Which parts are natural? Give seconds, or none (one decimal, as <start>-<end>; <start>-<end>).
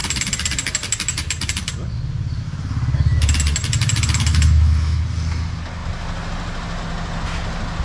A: 0.0-4.3; 5.0-7.8